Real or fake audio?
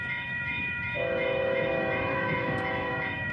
fake